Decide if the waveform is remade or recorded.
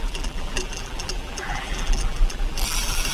remade